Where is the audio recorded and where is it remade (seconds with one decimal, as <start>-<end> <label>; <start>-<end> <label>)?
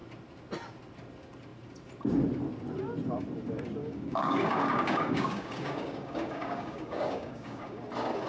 0.0-3.8 recorded; 3.8-7.8 remade; 7.8-8.3 recorded